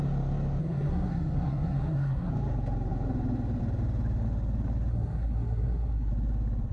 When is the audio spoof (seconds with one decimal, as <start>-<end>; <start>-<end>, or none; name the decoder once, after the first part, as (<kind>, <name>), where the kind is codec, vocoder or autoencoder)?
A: 0.6-2.3 (codec, SNAC); 4.9-6.1